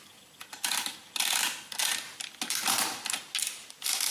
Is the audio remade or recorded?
recorded